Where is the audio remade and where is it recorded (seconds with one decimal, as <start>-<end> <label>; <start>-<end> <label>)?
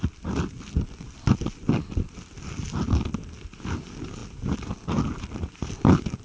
0.0-6.2 recorded